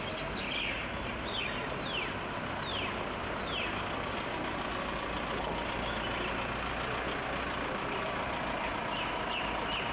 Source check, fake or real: real